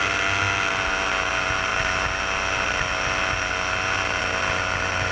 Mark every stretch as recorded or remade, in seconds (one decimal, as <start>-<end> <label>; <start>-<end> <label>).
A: 0.0-5.1 recorded